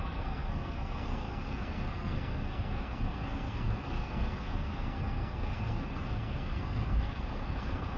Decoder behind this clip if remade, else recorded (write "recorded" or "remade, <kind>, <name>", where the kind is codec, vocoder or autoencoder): remade, codec, SNAC